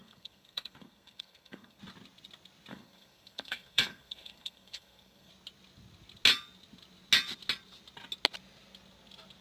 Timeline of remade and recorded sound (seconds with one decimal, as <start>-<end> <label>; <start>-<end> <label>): 0.0-1.8 remade; 1.8-2.7 recorded; 2.7-5.3 remade; 5.3-9.4 recorded